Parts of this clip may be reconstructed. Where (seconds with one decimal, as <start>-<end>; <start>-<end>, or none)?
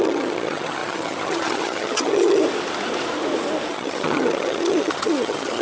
0.0-2.4; 3.7-5.6